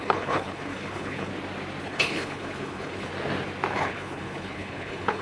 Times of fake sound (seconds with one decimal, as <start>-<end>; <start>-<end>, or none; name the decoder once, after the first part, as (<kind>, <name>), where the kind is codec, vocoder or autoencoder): 0.0-1.3 (codec, HILCodec); 1.8-3.1; 3.7-5.2